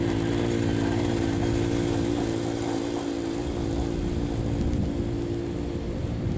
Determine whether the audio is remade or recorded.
recorded